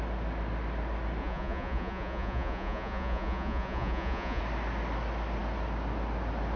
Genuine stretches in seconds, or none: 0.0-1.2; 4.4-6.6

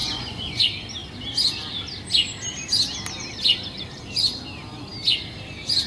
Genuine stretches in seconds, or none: 0.6-5.9